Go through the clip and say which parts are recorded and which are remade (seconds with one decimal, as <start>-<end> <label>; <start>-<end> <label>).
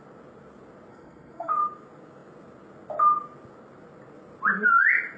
0.0-0.9 recorded; 0.9-1.5 remade; 1.5-5.2 recorded